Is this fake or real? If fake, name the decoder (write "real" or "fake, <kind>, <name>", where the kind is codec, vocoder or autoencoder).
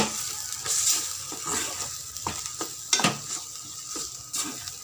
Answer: real